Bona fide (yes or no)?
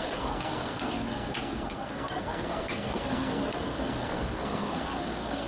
no